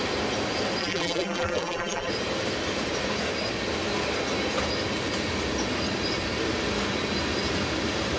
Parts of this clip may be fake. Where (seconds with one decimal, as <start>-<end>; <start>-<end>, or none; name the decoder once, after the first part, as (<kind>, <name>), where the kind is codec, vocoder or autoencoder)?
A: 0.8-2.1 (vocoder, BigVGAN v2)